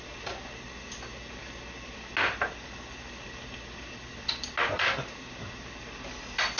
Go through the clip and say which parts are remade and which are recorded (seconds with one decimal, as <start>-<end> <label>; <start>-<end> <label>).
0.0-6.6 recorded